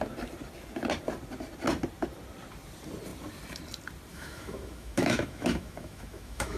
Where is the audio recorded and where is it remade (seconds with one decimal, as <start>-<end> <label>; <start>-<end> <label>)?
0.0-4.1 recorded; 4.1-6.6 remade